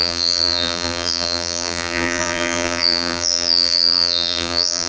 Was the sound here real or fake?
fake